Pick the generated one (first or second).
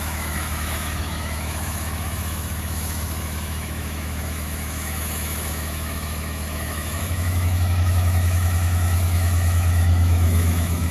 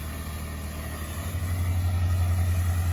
first